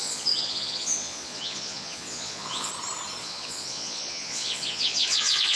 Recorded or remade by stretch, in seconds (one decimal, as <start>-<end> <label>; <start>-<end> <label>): 0.0-2.7 remade; 2.7-3.2 recorded; 3.2-5.6 remade